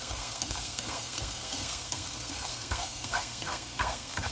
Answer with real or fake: fake